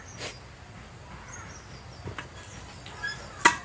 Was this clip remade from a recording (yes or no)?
no